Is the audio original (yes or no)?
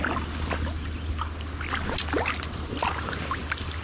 yes